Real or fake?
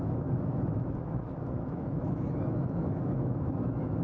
fake